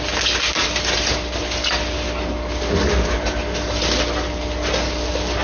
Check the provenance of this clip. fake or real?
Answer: real